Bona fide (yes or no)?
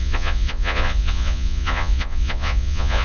no